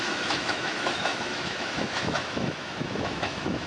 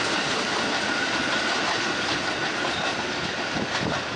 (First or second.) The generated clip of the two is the first